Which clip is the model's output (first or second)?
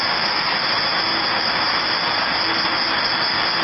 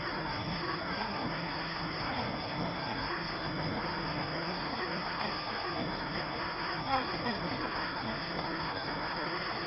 second